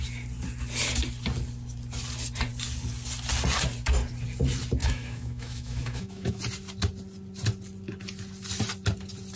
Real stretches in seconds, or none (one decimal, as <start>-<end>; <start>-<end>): 0.0-4.8; 6.4-9.4